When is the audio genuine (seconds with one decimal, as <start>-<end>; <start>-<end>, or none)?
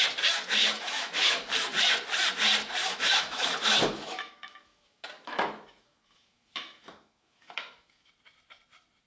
0.0-0.6; 1.5-2.8; 8.1-9.1